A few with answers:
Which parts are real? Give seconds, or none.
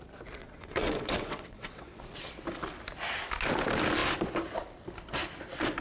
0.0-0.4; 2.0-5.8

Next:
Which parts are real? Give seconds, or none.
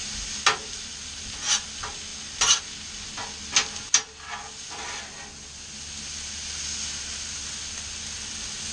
0.0-8.7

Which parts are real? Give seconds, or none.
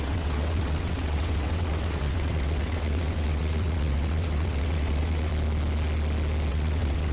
5.3-6.5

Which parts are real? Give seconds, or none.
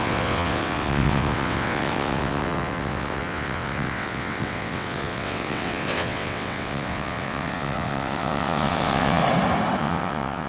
9.2-9.8